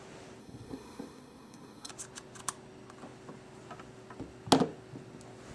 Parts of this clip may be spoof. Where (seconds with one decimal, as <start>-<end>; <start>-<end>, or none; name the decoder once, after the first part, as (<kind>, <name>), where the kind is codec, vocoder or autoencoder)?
0.4-1.9 (codec, SNAC)